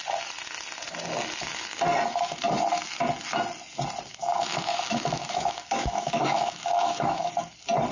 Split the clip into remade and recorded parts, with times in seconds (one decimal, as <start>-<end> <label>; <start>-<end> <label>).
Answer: 0.0-4.1 recorded; 4.1-7.3 remade; 7.3-7.9 recorded